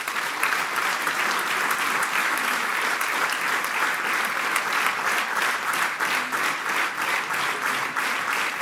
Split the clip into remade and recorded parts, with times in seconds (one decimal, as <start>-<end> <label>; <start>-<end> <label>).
0.0-2.2 recorded; 2.2-2.7 remade; 2.7-8.6 recorded